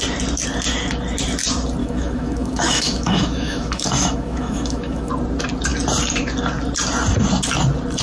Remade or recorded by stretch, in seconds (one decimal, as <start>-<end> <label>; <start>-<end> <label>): 0.0-1.8 recorded; 1.8-5.1 remade; 5.1-8.0 recorded